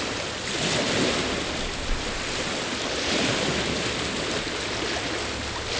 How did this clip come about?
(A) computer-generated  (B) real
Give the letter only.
B